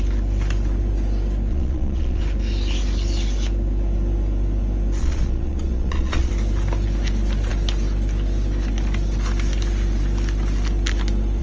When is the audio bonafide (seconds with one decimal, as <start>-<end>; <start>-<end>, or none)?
0.0-1.5; 2.2-5.0; 6.3-11.4